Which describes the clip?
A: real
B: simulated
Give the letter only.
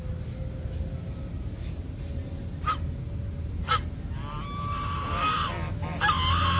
A